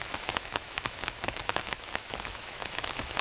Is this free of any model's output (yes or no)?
no